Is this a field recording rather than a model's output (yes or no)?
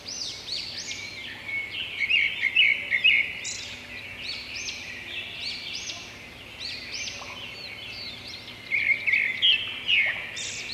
yes